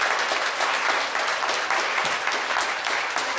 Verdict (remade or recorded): recorded